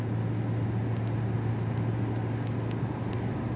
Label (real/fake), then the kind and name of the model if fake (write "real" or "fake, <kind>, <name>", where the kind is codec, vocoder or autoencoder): real